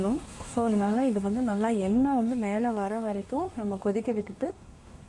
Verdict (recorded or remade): remade